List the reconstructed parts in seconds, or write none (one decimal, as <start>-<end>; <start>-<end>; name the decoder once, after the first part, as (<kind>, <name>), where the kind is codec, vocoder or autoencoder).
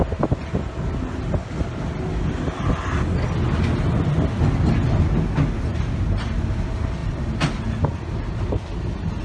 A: 5.7-6.4 (vocoder, BigVGAN v2); 7.0-8.7